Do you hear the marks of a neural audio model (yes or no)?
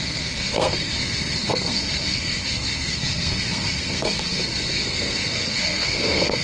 yes